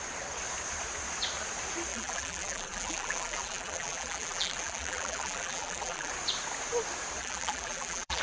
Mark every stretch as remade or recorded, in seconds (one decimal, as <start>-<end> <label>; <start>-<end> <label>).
0.0-1.9 recorded; 1.9-6.1 remade; 6.1-7.2 recorded; 7.2-8.2 remade